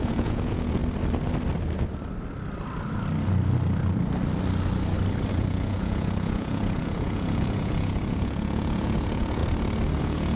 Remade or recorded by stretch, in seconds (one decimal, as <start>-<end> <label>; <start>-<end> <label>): 0.0-0.8 remade; 0.8-5.3 recorded; 5.3-9.4 remade; 9.4-10.0 recorded; 10.0-10.4 remade